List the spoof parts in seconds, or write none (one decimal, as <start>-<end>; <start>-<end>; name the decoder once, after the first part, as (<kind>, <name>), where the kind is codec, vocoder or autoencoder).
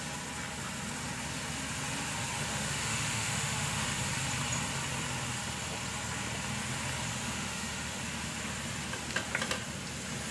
2.5-4.0 (autoencoder, DAC-VAE); 7.1-8.0